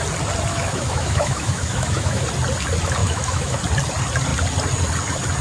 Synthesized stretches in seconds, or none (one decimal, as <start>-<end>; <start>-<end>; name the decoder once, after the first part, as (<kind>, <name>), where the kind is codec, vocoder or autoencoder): 0.5-2.2 (autoencoder, DAC-VAE); 3.0-3.6